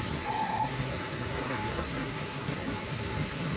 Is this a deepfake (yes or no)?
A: yes